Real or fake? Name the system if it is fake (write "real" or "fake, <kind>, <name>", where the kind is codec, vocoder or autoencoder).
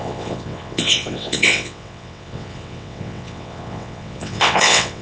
fake, vocoder, WaveNeXt